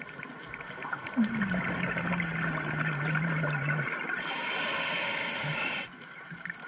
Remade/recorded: recorded